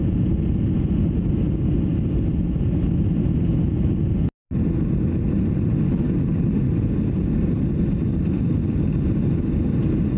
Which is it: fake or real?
real